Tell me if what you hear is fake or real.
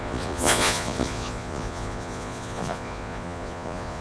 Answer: fake